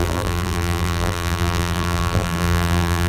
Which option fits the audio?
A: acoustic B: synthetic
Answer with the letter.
B